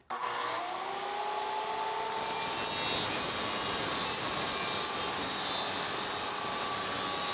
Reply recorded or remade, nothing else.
recorded